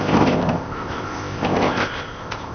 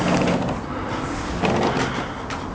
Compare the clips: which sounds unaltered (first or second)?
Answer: second